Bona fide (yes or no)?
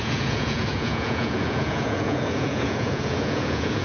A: no